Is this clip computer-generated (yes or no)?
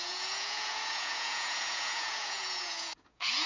yes